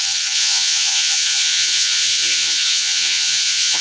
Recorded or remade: remade